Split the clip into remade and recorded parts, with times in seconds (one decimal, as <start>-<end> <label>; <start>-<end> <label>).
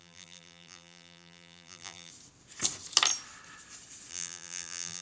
0.0-2.1 remade; 2.1-4.1 recorded; 4.1-5.0 remade